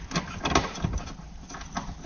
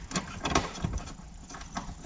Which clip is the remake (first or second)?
second